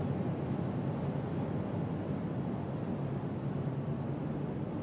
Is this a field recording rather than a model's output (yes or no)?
yes